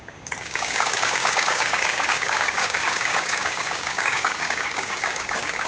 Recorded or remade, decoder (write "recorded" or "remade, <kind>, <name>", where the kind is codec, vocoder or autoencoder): remade, codec, DAC